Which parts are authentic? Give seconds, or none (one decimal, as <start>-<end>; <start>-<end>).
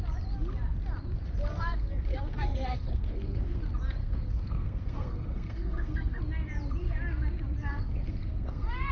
0.0-1.5; 3.6-4.0; 6.2-7.6